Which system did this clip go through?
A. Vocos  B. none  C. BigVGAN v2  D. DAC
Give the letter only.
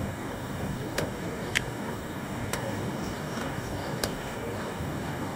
D